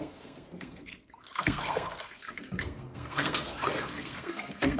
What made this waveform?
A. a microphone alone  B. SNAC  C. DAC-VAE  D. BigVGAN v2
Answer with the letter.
B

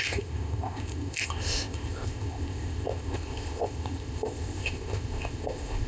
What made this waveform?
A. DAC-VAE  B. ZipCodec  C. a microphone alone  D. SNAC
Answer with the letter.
B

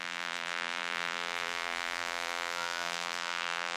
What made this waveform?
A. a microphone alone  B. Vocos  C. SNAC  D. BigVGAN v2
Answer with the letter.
D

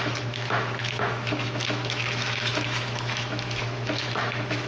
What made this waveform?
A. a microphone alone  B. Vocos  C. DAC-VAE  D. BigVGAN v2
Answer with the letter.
C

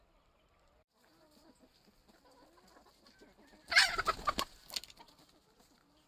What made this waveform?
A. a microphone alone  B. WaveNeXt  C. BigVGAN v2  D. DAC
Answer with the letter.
A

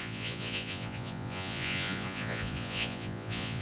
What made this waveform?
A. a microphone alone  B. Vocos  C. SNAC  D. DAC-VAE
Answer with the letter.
B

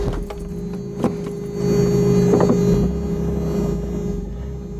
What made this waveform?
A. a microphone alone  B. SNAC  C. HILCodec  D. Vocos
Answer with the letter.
A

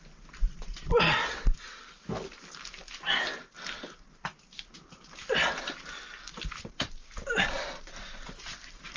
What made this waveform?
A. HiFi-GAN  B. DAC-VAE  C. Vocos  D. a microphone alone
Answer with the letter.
D